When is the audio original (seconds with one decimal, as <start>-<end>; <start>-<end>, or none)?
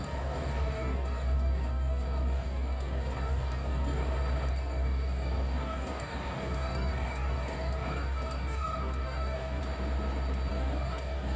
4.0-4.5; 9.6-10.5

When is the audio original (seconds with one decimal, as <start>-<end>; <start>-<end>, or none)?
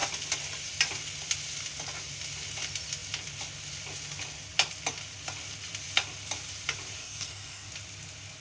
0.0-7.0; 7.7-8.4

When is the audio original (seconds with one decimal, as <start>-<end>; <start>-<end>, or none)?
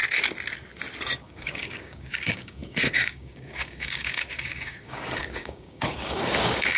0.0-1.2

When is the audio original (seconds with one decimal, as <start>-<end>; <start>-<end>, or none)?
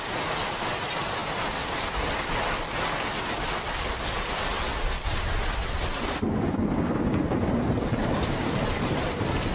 0.0-8.0; 8.5-9.5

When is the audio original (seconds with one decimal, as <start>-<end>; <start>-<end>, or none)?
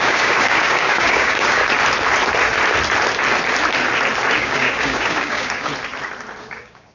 1.6-4.4; 5.7-6.4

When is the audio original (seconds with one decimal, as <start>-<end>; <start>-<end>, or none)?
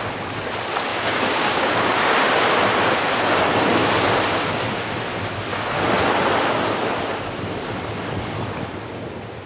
0.0-0.9; 2.3-9.5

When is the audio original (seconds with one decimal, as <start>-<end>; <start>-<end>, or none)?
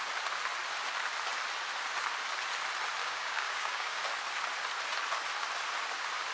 0.0-3.0; 4.0-6.3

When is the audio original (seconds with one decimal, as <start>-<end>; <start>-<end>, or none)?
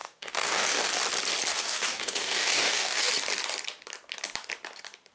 0.9-1.5; 3.1-5.1